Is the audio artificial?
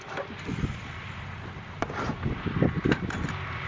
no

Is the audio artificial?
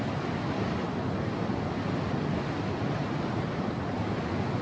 no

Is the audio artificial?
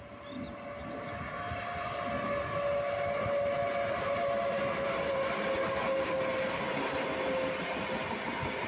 no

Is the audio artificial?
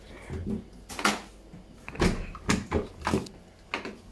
no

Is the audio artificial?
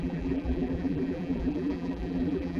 yes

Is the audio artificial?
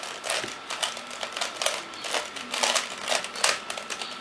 no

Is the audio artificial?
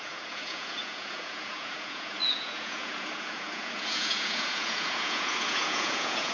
yes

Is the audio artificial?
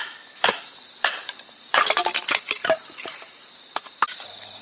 yes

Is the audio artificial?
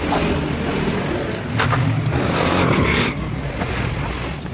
no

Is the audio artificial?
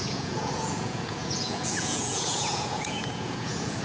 yes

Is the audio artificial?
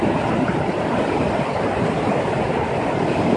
yes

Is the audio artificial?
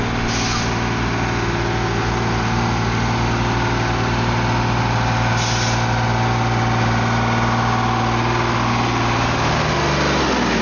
no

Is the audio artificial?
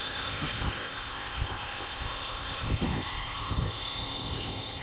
yes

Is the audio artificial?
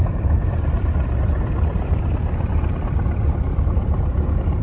yes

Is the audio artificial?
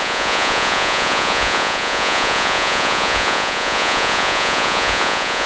yes